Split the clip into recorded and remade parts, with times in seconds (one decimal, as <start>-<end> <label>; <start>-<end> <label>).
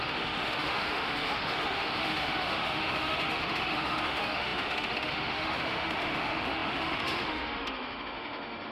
0.0-8.7 remade